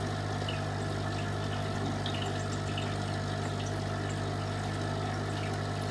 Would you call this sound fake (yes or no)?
no